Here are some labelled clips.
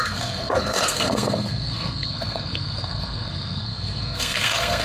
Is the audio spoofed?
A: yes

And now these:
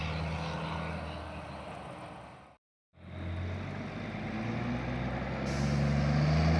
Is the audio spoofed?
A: no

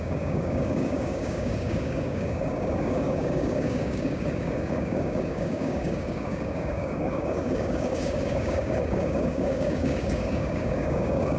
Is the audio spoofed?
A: yes